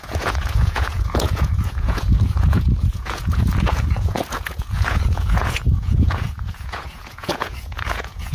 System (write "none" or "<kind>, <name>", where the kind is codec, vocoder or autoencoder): vocoder, Vocos